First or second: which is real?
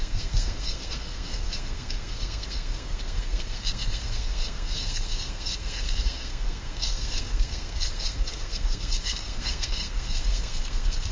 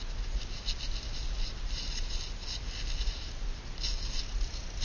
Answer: second